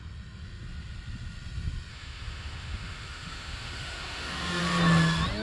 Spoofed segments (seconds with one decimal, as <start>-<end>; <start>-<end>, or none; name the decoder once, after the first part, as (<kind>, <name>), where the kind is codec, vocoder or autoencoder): 1.9-4.6 (autoencoder, DAC-VAE)